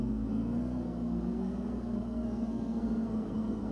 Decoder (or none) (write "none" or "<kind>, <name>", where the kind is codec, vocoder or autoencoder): codec, SNAC